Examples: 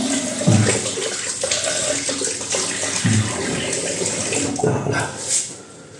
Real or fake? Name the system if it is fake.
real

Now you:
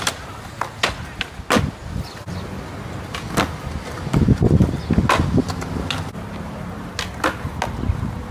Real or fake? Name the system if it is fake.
real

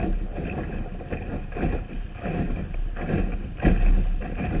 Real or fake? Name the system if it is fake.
real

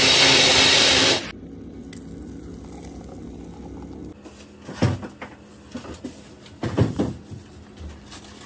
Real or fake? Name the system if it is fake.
real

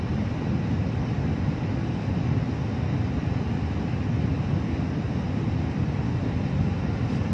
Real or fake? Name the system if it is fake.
real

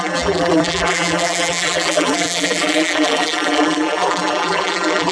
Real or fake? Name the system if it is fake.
fake, vocoder, BigVGAN v2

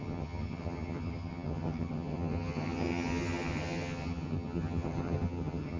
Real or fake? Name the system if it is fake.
fake, vocoder, HiFi-GAN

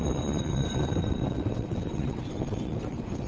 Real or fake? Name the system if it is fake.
fake, vocoder, WaveNeXt